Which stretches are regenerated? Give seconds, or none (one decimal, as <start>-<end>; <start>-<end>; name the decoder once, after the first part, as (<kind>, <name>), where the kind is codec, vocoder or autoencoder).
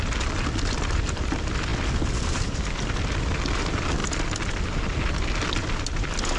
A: 0.0-1.7 (vocoder, BigVGAN v2); 2.3-6.4